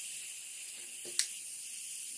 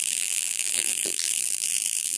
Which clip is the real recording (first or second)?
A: first